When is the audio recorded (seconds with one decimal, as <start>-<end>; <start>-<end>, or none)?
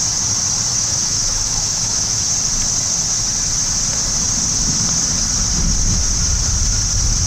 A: 0.0-0.7; 2.2-7.3